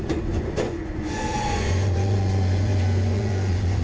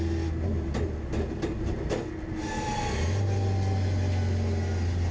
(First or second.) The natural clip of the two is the second